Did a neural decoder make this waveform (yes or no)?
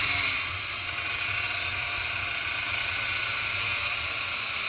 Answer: no